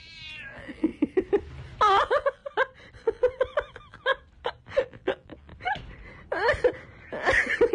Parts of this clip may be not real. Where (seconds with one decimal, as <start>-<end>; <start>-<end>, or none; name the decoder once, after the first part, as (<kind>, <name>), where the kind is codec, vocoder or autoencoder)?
0.0-0.9 (vocoder, BigVGAN v2); 2.0-2.4; 3.0-4.1; 4.8-5.5